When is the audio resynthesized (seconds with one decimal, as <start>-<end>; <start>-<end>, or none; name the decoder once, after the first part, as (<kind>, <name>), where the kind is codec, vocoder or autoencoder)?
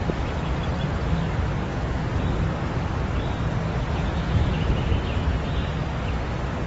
1.7-2.2 (vocoder, Vocos); 3.9-4.7